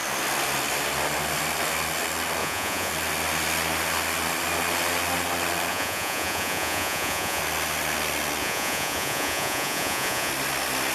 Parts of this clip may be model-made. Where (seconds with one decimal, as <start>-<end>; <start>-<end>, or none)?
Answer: 2.4-2.9; 5.7-7.4; 8.4-10.3